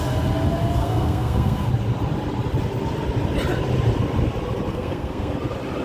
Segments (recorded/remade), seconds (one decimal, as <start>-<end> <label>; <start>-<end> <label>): 0.0-0.8 recorded; 0.8-1.7 remade; 1.7-4.7 recorded; 4.7-5.3 remade; 5.3-5.8 recorded